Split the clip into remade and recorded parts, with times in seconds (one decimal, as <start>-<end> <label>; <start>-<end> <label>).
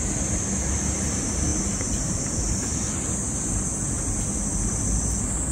0.0-5.5 recorded